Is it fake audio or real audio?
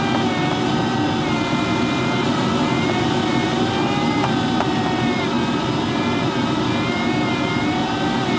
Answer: real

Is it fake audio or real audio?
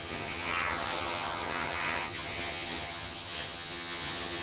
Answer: fake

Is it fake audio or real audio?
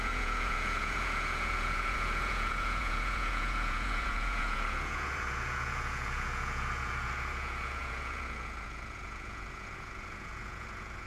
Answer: fake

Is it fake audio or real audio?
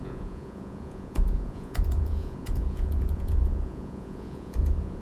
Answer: fake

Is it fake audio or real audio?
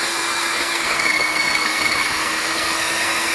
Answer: fake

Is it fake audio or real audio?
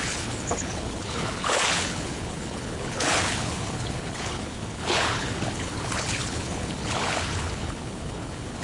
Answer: fake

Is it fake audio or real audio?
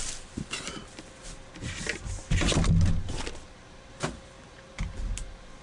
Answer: real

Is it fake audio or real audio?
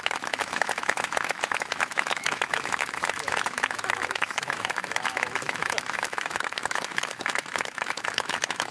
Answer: fake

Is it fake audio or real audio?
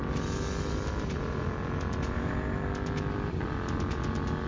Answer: real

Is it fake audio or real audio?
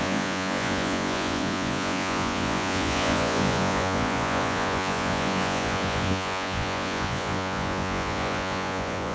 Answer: fake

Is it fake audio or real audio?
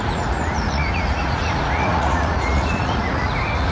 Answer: fake